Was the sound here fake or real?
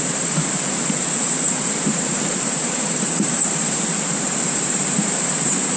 fake